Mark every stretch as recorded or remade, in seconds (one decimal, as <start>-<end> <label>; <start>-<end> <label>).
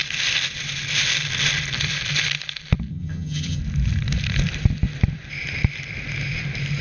0.0-2.9 recorded; 2.9-3.6 remade; 3.6-6.8 recorded